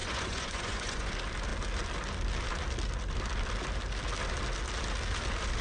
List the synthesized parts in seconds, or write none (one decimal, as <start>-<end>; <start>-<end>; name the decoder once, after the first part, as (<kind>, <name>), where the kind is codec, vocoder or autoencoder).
0.0-1.1 (vocoder, Vocos)